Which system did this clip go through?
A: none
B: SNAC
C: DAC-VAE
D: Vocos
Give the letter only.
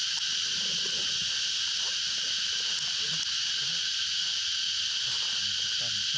A